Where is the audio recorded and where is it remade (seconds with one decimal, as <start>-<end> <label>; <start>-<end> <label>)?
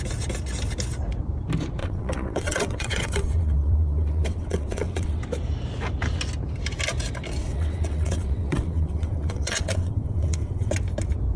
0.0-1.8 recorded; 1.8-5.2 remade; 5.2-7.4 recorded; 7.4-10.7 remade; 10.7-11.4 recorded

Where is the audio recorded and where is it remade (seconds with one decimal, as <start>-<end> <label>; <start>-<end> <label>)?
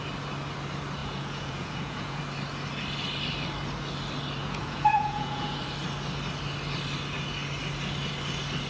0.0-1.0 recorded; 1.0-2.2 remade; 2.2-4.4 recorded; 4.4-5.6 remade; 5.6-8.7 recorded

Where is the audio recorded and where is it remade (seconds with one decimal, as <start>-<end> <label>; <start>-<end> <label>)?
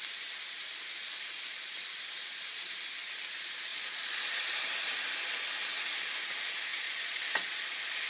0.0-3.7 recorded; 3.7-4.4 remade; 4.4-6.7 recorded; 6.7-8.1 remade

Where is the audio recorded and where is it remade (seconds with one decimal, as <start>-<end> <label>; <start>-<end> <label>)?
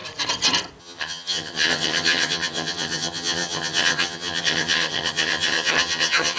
0.0-0.8 recorded; 0.8-6.4 remade